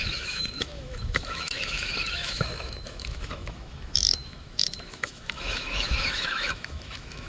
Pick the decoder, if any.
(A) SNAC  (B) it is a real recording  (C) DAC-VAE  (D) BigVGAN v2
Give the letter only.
C